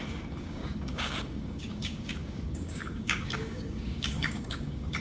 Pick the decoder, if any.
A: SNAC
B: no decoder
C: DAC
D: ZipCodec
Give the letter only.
C